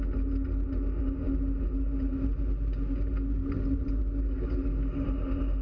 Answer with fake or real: real